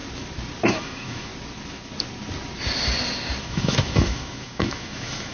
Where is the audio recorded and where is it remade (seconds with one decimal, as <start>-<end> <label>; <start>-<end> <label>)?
0.0-0.7 recorded; 0.7-1.3 remade; 1.3-3.4 recorded; 3.4-5.3 remade

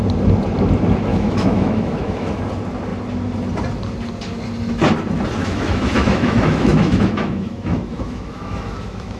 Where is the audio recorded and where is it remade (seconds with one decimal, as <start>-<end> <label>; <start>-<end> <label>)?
0.0-1.1 recorded; 1.1-2.4 remade; 2.4-5.4 recorded; 5.4-9.2 remade

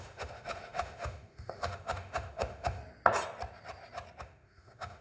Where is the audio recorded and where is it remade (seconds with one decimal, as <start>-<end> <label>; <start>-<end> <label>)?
0.0-2.8 remade; 2.8-4.2 recorded; 4.2-5.0 remade

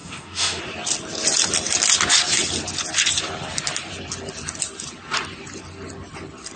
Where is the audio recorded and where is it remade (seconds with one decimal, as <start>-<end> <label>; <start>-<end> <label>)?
0.0-0.6 remade; 0.6-6.6 recorded

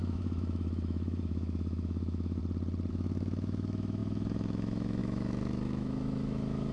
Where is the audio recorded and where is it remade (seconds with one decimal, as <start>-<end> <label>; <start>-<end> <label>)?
0.0-2.4 remade; 2.4-2.9 recorded; 2.9-6.7 remade

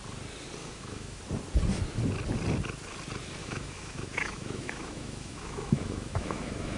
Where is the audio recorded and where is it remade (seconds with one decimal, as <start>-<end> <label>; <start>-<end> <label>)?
0.0-0.6 recorded; 0.6-1.2 remade; 1.2-3.4 recorded; 3.4-6.8 remade

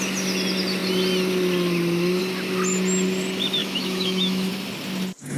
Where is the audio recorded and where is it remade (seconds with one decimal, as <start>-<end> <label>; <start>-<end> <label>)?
0.0-3.6 recorded; 3.6-4.5 remade; 4.5-5.4 recorded